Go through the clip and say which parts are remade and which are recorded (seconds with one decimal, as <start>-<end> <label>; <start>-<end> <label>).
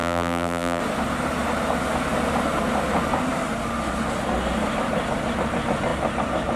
0.0-0.8 remade; 0.8-6.6 recorded